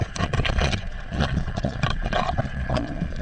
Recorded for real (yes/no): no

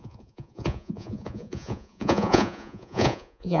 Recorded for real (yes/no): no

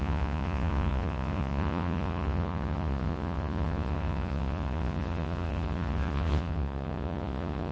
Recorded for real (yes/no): no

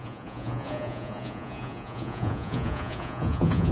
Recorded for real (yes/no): no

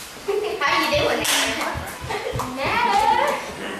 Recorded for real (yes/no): yes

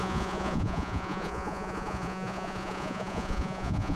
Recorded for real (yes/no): no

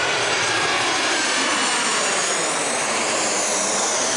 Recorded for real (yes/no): yes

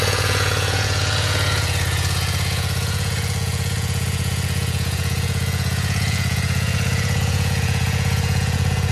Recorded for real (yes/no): no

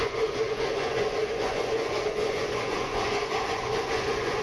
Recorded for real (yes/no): no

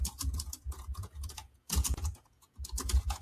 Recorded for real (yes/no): no